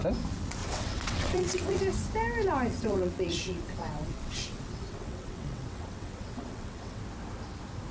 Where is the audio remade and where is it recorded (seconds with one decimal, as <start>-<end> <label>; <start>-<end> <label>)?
0.0-0.6 recorded; 0.6-1.8 remade; 1.8-2.7 recorded; 2.7-7.0 remade; 7.0-7.9 recorded